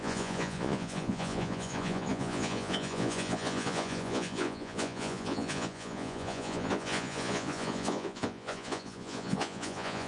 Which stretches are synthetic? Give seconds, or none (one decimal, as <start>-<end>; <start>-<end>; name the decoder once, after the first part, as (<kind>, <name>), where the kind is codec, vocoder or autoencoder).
0.0-10.1 (vocoder, Vocos)